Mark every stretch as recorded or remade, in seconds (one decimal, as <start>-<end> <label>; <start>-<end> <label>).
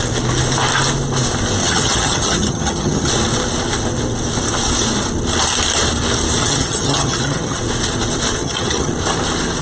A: 0.0-1.6 recorded; 1.6-3.1 remade; 3.1-6.4 recorded; 6.4-7.6 remade; 7.6-8.4 recorded; 8.4-8.9 remade; 8.9-9.6 recorded